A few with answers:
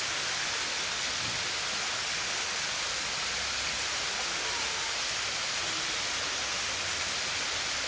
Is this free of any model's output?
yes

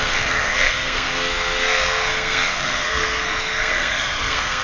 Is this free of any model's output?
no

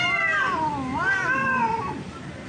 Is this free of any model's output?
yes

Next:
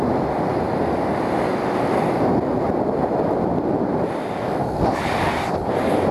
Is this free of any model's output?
yes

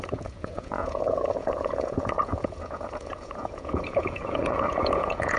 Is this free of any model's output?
no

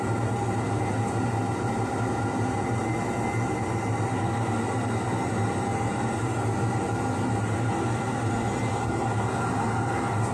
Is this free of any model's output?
yes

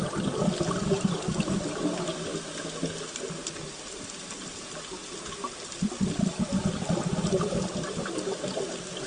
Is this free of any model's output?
yes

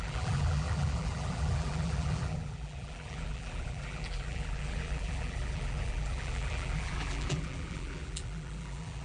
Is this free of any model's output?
no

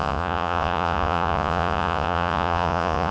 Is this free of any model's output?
no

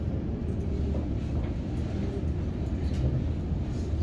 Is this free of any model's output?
yes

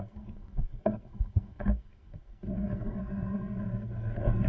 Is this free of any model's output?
no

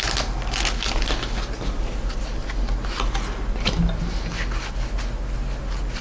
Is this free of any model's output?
yes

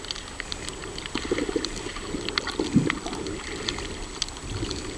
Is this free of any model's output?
yes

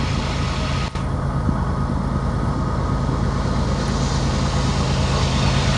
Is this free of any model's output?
yes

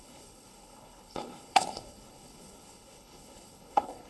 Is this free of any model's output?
no